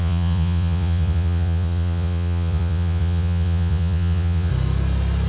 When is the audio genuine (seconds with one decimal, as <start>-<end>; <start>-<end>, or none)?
4.5-5.3